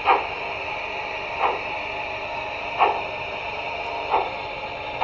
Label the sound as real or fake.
real